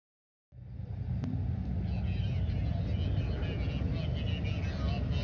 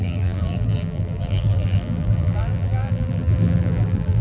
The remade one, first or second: second